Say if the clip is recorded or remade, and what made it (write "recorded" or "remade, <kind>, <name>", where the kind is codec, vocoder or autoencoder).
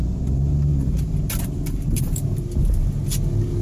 recorded